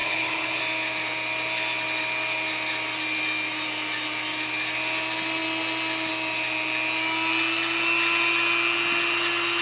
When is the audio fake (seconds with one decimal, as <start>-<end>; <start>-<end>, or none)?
0.0-0.6